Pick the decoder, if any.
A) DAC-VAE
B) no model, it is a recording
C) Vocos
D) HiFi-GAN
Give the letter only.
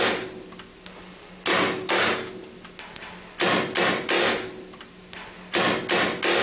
B